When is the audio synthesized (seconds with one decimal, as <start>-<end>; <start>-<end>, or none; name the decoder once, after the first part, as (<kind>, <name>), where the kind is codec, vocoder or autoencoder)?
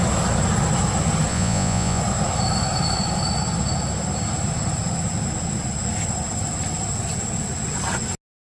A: 1.3-2.0 (vocoder, Vocos)